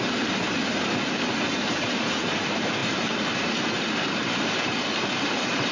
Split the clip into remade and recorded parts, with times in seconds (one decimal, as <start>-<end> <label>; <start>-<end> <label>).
0.0-5.7 remade